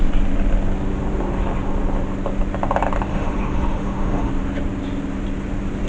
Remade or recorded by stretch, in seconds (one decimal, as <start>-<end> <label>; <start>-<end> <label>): 0.0-3.1 recorded; 3.1-4.3 remade; 4.3-5.9 recorded